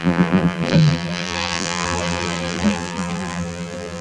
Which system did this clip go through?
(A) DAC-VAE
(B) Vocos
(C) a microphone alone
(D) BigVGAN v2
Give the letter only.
D